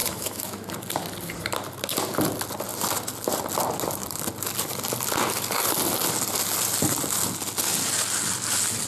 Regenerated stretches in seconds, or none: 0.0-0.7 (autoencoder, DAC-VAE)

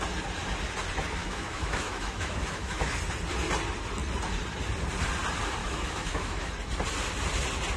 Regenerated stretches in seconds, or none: 1.2-2.9 (autoencoder, DAC-VAE); 5.6-6.5

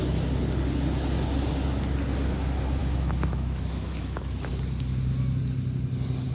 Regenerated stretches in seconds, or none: 2.8-4.5 (autoencoder, DAC-VAE)